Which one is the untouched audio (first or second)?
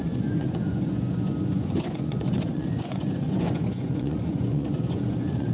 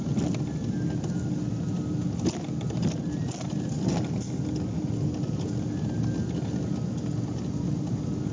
second